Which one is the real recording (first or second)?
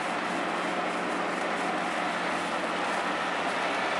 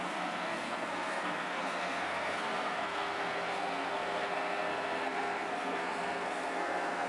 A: first